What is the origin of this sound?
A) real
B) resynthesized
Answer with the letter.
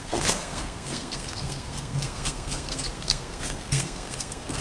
B